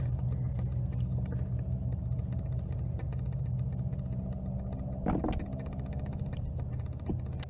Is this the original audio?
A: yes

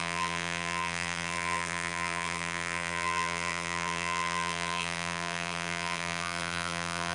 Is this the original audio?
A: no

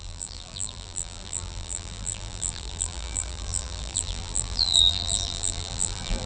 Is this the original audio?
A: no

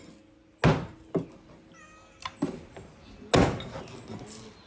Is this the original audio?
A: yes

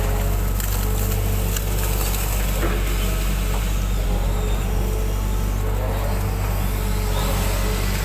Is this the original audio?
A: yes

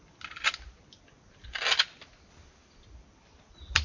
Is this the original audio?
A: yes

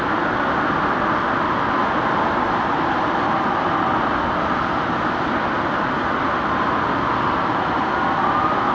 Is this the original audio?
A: yes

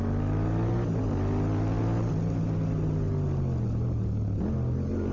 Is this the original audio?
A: yes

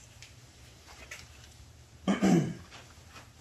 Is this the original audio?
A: no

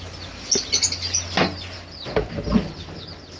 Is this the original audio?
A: yes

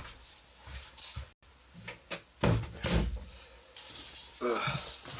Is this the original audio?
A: yes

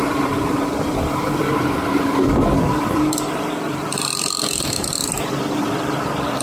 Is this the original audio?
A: no